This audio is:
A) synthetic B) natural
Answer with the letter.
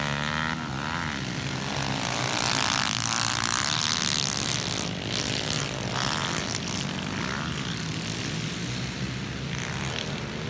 B